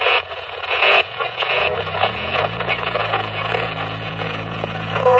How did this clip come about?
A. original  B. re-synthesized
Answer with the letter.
B